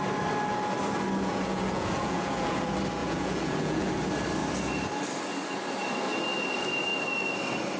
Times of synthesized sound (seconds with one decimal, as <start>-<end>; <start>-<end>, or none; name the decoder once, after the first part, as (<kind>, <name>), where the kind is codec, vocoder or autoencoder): 1.3-2.6 (vocoder, Vocos); 3.0-3.9